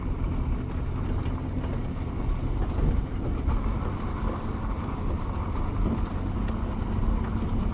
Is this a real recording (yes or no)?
yes